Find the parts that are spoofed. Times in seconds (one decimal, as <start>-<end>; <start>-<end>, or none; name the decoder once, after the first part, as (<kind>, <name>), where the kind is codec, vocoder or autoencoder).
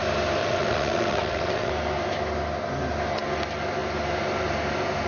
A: 0.4-1.7 (vocoder, WaveNeXt)